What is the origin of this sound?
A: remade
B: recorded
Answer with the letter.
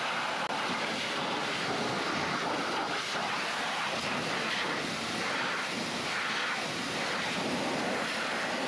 B